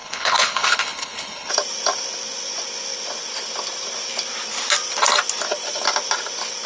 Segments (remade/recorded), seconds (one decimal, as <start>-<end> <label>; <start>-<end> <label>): 0.0-1.5 remade; 1.5-6.7 recorded